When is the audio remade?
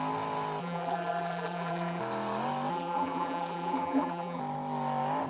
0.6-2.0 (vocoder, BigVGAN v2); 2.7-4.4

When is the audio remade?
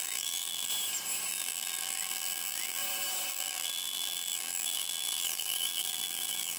0.0-0.7 (vocoder, BigVGAN v2); 1.3-2.8; 3.3-6.6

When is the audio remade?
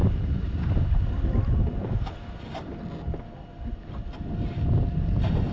none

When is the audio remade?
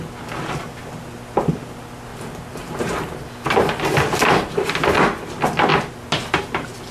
2.1-4.7 (vocoder, BigVGAN v2)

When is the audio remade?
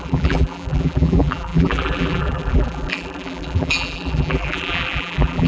0.0-5.5 (vocoder, BigVGAN v2)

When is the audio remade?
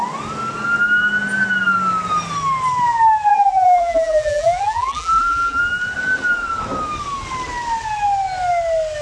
3.3-5.6 (vocoder, BigVGAN v2)